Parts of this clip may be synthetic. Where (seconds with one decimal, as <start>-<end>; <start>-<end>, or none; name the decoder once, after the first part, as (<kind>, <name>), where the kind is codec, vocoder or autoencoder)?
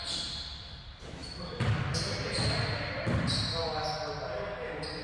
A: none